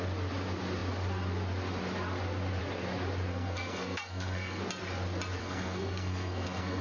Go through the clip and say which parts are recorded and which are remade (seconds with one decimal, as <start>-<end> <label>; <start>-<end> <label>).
0.0-3.3 recorded; 3.3-4.6 remade; 4.6-5.4 recorded; 5.4-6.8 remade